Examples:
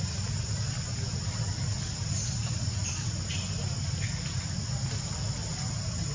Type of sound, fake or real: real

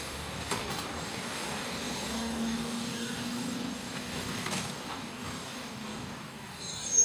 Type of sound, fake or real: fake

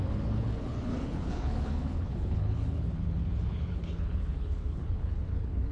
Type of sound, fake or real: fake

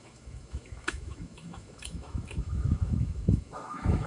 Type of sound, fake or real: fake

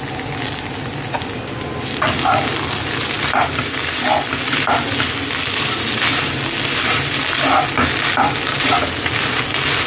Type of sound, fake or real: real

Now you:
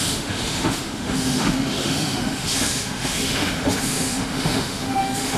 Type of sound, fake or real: fake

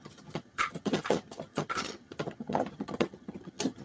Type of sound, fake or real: fake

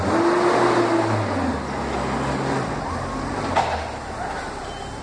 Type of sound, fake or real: real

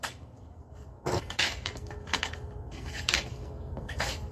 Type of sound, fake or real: fake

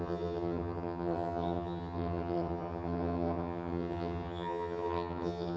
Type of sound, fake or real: fake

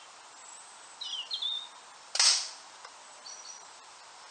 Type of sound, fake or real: real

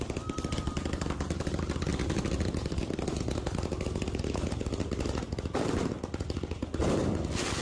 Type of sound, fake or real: real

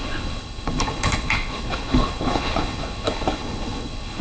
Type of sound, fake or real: fake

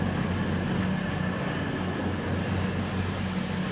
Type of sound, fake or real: real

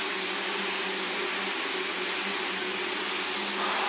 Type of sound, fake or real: real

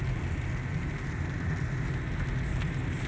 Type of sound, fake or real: real